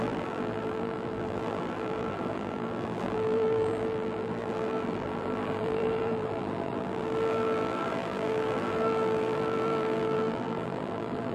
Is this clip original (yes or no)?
no